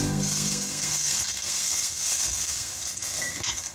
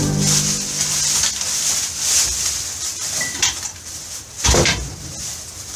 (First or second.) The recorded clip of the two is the second